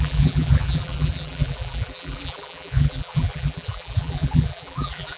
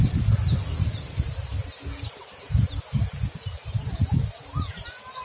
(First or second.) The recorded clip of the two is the second